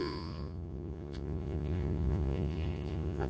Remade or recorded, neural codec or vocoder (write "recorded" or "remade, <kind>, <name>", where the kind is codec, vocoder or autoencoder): remade, vocoder, Vocos